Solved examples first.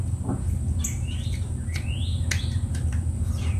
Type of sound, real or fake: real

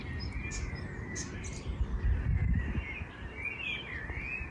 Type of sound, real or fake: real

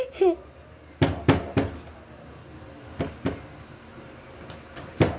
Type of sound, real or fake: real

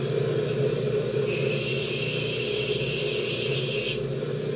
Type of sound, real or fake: real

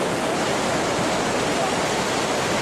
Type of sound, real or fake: real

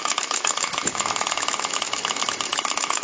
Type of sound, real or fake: fake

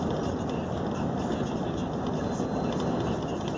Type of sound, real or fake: real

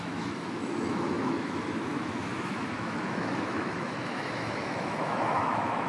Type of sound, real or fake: fake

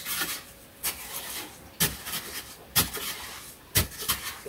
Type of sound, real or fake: real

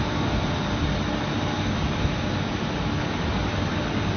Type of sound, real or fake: real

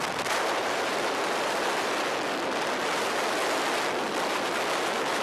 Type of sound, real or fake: real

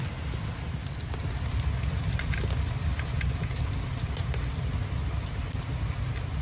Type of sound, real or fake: real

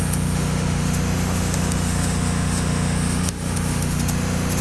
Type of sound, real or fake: fake